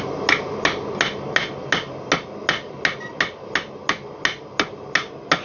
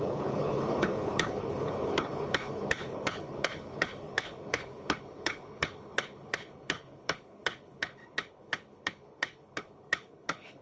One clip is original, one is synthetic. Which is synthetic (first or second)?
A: second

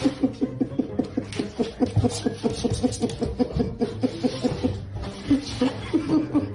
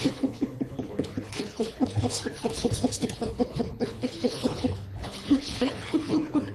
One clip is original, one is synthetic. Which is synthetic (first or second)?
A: second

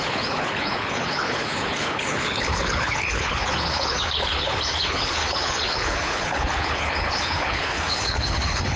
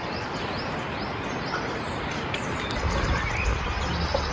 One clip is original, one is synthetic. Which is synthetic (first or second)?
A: first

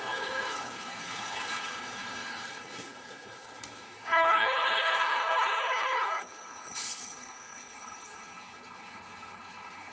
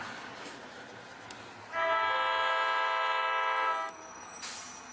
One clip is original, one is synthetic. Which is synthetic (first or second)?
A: first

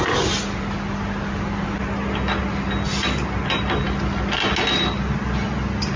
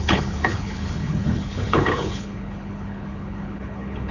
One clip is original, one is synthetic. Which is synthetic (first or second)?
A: second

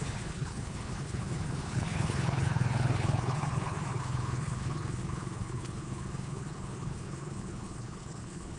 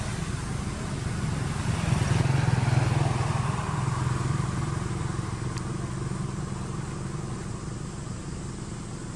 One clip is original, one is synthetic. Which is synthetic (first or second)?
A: first